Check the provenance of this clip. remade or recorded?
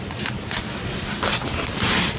recorded